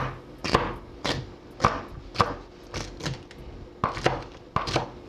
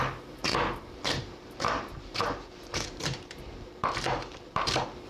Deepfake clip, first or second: second